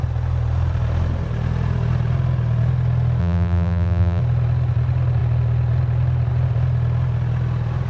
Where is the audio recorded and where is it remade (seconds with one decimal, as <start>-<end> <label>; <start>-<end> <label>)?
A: 0.0-3.2 recorded; 3.2-4.2 remade; 4.2-7.9 recorded